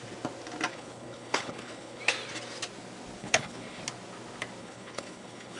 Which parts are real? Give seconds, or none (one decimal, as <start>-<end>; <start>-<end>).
0.0-0.7; 2.0-3.2; 3.8-4.6